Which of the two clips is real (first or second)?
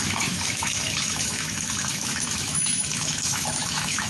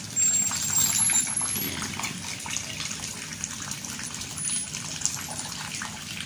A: second